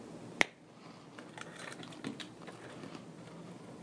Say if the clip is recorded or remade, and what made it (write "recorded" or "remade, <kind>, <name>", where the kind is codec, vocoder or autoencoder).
recorded